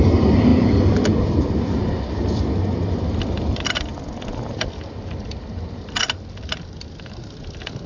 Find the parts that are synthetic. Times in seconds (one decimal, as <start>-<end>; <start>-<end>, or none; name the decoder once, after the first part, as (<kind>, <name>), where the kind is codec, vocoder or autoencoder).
0.0-0.5 (vocoder, BigVGAN v2); 1.5-3.9